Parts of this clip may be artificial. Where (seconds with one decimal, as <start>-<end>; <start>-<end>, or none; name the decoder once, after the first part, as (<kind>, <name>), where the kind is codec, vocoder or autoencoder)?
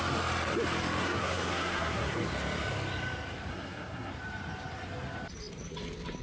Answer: 1.0-2.3 (codec, SNAC); 3.5-4.1